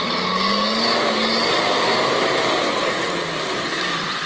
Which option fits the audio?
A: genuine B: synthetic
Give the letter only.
A